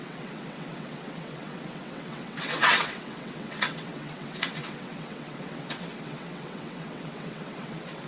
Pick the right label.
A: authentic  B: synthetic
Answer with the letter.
B